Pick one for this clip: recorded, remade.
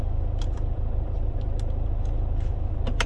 remade